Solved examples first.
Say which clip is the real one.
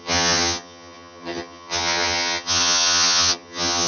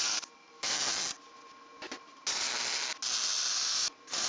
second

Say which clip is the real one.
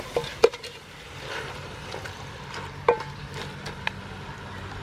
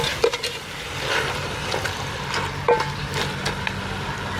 second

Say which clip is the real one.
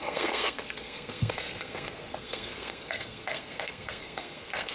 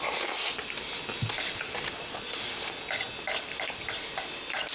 second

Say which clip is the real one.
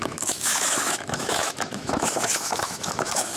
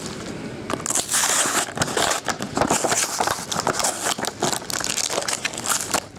second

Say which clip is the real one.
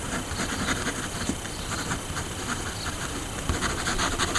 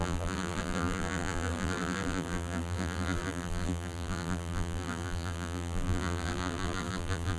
first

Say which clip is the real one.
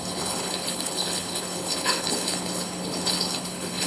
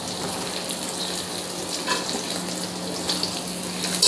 second